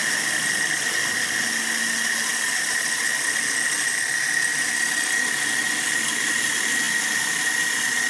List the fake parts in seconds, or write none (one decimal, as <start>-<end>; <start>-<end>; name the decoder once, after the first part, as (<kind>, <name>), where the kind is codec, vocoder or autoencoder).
2.3-3.0 (vocoder, BigVGAN v2)